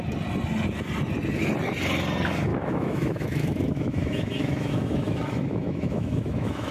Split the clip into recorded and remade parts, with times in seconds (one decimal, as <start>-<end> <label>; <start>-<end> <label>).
0.0-2.5 recorded; 2.5-6.7 remade

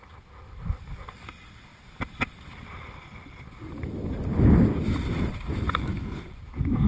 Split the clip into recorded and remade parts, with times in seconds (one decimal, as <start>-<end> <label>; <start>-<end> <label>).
0.0-6.9 recorded

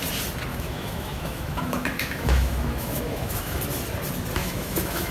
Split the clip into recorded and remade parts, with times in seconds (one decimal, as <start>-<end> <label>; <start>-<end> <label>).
0.0-0.5 recorded; 0.5-3.6 remade; 3.6-4.4 recorded; 4.4-5.1 remade

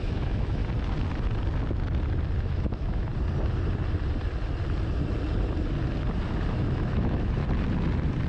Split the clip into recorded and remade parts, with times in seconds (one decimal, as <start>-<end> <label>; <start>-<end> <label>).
0.0-0.6 remade; 0.6-2.4 recorded; 2.4-3.1 remade; 3.1-6.5 recorded; 6.5-7.4 remade; 7.4-8.3 recorded

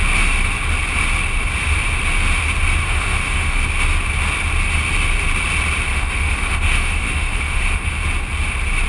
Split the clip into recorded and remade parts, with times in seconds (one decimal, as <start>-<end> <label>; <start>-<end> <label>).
0.0-2.8 recorded; 2.8-3.6 remade; 3.6-5.9 recorded; 5.9-7.9 remade; 7.9-8.9 recorded

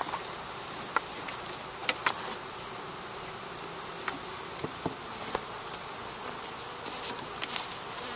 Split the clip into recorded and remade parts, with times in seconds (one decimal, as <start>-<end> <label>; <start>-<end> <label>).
0.0-8.2 recorded

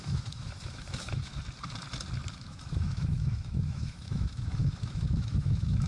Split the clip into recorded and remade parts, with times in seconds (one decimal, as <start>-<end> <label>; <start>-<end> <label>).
0.0-1.3 remade; 1.3-2.3 recorded; 2.3-5.9 remade